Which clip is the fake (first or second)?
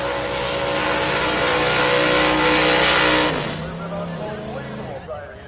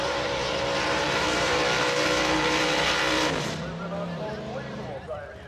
second